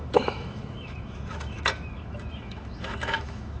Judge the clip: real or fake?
fake